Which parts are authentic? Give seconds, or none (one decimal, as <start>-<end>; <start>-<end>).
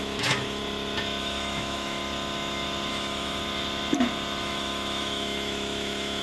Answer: 0.6-1.2; 2.0-2.9; 3.4-4.4